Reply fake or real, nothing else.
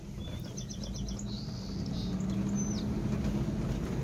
real